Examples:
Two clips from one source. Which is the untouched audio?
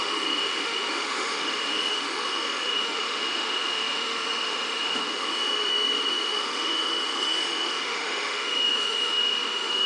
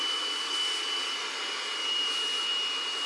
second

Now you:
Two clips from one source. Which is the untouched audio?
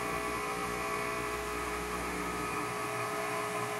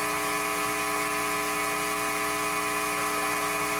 second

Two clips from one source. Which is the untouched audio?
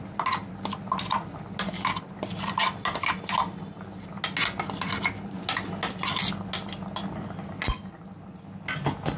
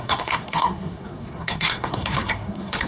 first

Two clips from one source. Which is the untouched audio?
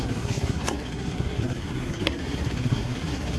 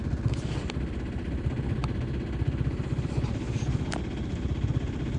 second